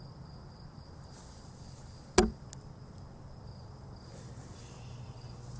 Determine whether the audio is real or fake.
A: real